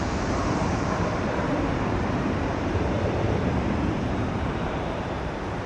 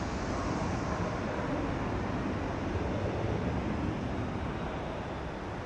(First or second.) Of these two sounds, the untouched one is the second